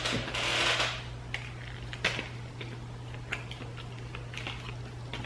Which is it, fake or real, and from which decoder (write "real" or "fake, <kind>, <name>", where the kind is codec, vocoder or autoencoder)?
real